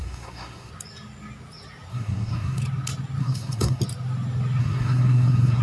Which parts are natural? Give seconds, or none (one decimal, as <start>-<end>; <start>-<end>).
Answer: 0.7-1.9; 2.6-3.2; 3.8-4.6